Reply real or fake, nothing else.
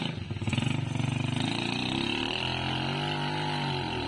real